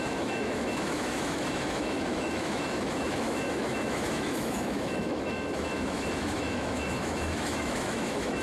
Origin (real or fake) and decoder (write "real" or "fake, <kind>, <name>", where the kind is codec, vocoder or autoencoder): fake, autoencoder, DAC-VAE